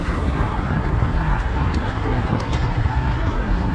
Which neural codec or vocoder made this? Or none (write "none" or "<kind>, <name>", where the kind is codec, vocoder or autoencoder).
codec, SNAC